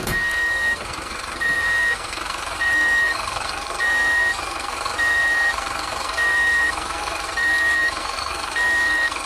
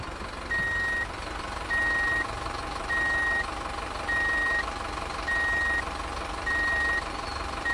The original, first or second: second